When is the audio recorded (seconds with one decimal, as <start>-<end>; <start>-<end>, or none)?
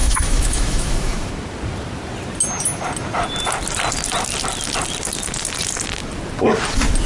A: 1.3-7.1